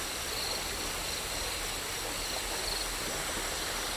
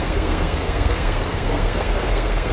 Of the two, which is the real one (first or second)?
first